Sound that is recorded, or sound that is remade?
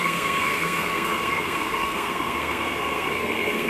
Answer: remade